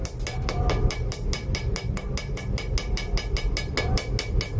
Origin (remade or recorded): recorded